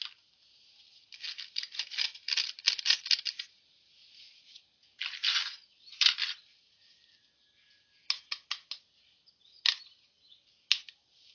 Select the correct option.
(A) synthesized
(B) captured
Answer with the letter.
B